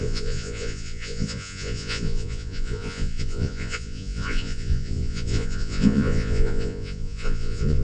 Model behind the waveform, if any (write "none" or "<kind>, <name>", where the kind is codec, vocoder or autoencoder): vocoder, Vocos